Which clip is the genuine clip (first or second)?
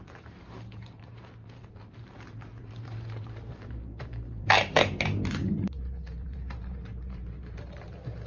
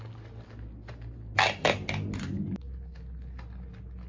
second